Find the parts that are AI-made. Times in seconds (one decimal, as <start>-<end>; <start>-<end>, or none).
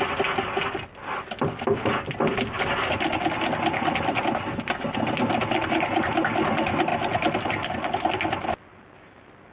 none